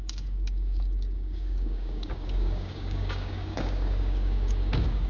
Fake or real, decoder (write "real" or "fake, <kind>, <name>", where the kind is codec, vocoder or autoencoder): fake, codec, DAC